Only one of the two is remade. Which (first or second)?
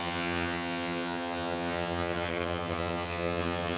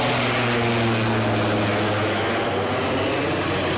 first